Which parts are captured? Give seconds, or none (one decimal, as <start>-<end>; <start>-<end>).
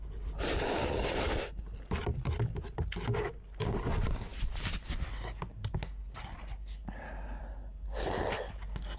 0.0-9.0